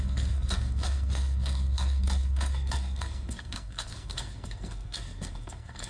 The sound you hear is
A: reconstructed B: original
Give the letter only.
A